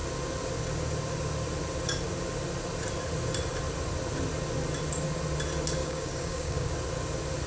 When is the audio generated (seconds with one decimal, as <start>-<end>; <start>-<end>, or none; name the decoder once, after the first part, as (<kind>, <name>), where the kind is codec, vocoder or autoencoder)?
5.8-6.7 (codec, DAC)